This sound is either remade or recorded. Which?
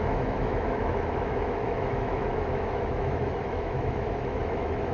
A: remade